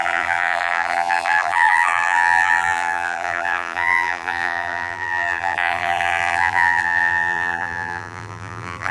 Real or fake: fake